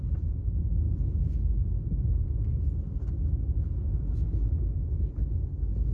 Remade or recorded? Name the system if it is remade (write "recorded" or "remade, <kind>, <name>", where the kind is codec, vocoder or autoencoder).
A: recorded